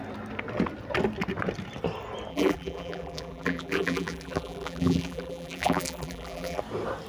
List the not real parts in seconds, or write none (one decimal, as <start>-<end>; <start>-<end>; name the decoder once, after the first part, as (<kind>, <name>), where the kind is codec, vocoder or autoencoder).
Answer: 2.3-6.6 (vocoder, BigVGAN v2)